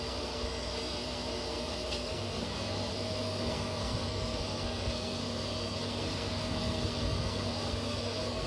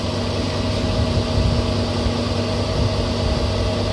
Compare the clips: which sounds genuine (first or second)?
second